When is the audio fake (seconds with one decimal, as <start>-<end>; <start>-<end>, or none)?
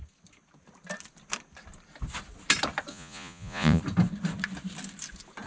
2.9-3.8